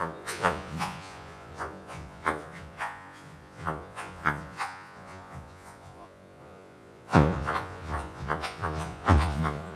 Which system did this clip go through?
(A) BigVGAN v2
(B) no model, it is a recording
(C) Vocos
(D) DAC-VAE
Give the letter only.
C